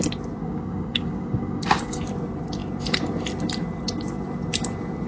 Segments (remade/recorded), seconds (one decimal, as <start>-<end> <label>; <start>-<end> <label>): 0.0-0.4 recorded; 0.4-2.0 remade; 2.0-5.1 recorded